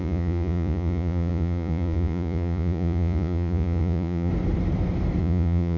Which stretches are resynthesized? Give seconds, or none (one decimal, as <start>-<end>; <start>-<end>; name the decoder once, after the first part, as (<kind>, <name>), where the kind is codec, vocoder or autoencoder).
0.0-4.3 (vocoder, Vocos); 5.2-5.8